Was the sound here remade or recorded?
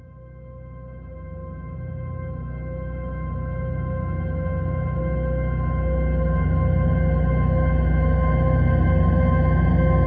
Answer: recorded